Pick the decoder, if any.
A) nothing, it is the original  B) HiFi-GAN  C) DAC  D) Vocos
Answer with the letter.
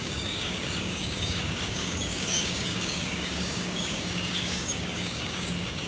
C